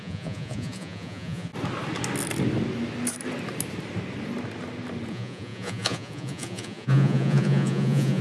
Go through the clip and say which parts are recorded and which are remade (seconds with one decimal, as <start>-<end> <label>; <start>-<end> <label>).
0.0-1.5 remade; 1.5-5.1 recorded; 5.1-8.2 remade